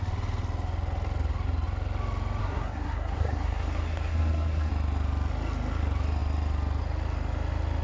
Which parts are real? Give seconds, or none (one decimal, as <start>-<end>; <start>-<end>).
0.0-2.4; 4.7-7.8